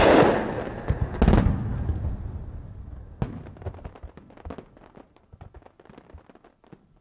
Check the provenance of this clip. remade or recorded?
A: recorded